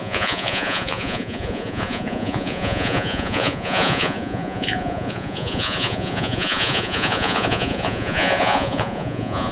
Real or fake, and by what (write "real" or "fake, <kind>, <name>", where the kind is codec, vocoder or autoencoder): fake, vocoder, Vocos